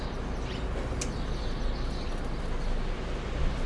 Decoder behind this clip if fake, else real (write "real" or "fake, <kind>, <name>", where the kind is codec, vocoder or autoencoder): real